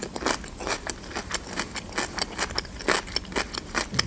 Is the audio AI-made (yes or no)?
no